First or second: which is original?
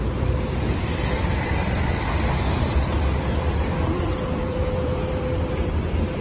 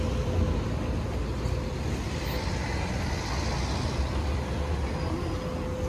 second